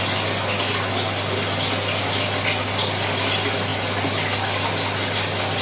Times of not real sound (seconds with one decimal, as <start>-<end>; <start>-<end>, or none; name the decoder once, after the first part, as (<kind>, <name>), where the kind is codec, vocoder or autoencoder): none